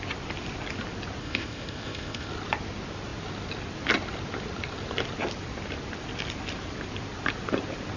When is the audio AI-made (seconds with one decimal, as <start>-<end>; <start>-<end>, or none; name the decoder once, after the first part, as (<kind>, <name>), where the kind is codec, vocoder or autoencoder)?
1.2-2.3 (codec, ZipCodec)

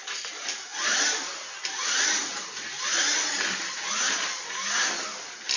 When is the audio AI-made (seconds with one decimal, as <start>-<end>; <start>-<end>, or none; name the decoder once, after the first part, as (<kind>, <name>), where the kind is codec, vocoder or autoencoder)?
none